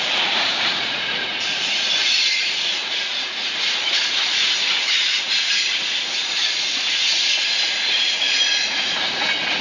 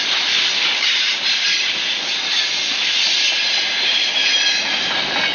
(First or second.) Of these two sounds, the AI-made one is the first